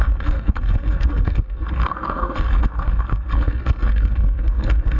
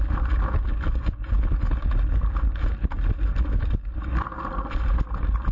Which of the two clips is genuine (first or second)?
second